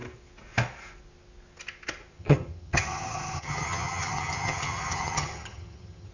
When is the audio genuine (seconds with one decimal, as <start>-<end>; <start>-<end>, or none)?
0.0-2.2